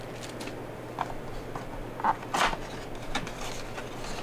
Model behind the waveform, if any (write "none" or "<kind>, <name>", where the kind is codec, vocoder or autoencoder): none